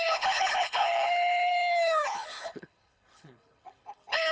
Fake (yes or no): yes